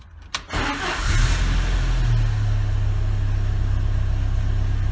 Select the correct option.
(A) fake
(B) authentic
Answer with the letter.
B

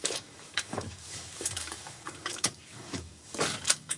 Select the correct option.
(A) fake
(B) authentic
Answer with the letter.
A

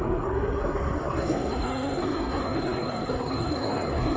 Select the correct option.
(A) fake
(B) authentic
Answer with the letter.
A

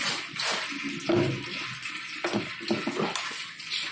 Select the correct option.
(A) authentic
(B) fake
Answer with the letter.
A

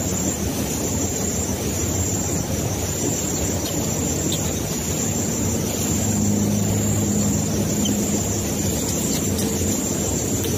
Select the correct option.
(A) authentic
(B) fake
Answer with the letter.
A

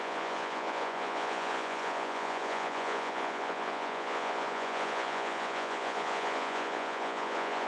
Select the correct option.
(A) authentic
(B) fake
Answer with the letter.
B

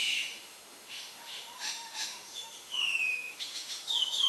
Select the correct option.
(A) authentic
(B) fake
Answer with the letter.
B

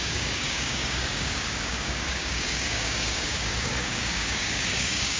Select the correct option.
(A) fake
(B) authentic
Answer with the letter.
A